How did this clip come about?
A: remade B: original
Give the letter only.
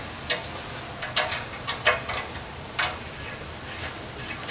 B